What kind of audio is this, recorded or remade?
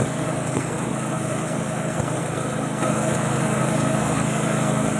remade